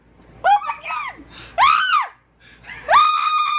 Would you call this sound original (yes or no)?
yes